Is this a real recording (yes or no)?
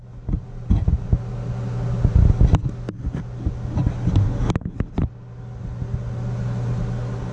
yes